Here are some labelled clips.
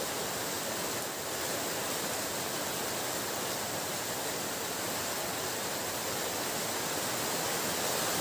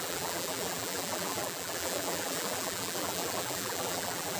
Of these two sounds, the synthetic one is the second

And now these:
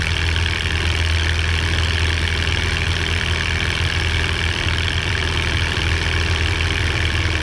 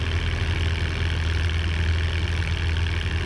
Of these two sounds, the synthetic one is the first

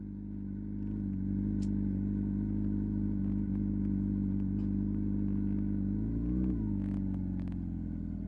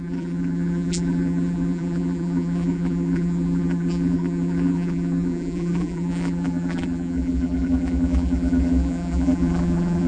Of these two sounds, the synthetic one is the second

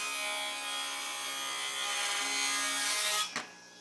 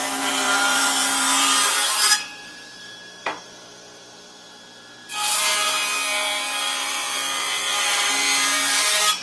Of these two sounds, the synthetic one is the second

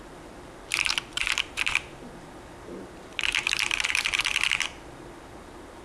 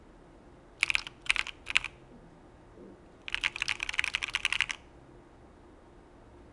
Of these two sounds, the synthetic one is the first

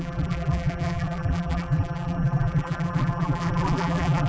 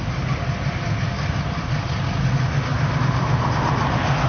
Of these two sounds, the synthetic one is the first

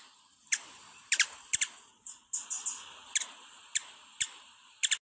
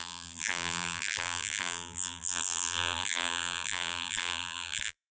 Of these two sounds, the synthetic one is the second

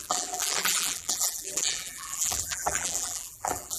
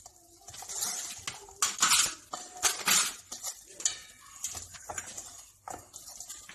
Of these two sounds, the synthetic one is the first